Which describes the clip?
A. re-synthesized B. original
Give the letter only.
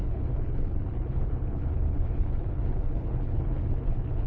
A